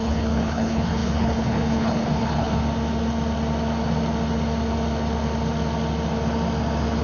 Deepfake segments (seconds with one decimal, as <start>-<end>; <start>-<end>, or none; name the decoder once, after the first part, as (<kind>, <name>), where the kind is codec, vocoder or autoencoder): 0.0-2.6 (codec, HILCodec)

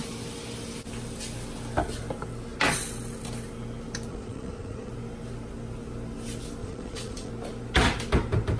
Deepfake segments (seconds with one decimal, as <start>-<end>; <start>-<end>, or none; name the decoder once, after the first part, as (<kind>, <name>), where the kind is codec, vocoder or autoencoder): 4.1-4.9 (vocoder, Vocos); 6.6-7.3